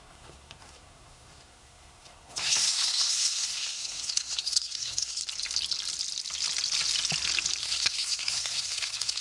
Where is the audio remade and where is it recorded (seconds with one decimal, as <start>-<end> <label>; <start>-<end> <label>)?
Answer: 0.0-5.2 remade; 5.2-7.6 recorded; 7.6-9.2 remade